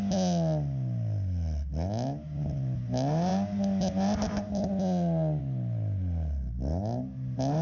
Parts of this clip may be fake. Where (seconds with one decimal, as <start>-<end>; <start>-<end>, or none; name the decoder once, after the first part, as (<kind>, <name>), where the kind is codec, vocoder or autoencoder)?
none